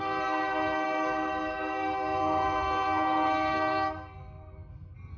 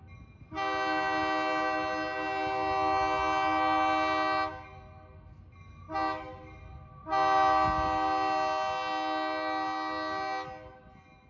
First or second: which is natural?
second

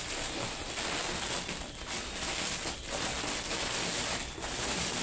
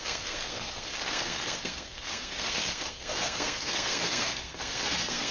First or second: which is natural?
first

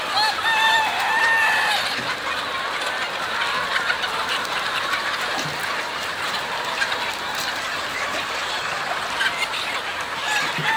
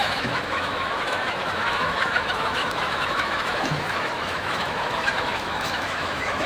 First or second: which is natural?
first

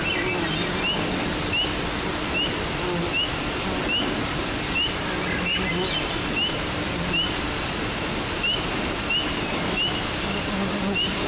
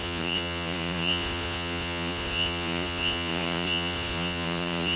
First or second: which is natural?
first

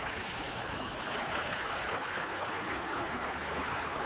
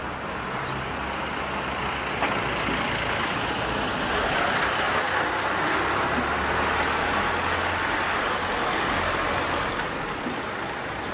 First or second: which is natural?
second